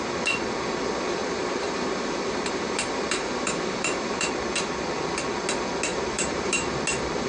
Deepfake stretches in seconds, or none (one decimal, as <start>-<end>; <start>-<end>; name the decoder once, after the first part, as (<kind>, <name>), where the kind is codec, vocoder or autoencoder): 1.2-4.3 (vocoder, BigVGAN v2); 5.9-6.8